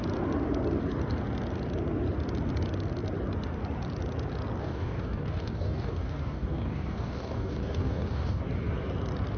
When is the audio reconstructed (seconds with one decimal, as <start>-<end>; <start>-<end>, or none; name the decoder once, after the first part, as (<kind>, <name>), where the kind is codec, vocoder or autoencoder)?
4.6-8.4 (codec, DAC)